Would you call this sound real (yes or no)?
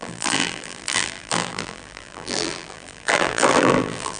no